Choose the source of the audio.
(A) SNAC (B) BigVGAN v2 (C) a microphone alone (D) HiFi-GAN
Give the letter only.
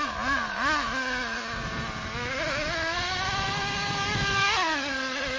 C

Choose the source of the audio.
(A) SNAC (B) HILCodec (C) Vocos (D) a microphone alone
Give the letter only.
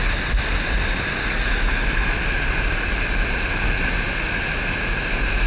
D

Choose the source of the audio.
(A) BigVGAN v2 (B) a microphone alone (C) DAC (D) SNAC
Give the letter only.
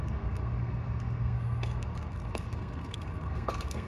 D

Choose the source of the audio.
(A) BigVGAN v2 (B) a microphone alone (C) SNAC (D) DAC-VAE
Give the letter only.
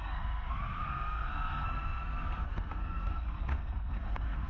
C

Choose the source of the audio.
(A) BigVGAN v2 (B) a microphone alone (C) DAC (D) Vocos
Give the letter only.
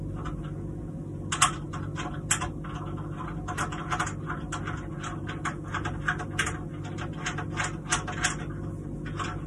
B